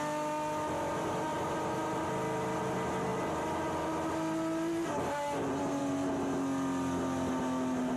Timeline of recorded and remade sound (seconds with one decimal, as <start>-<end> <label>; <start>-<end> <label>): 0.0-8.0 recorded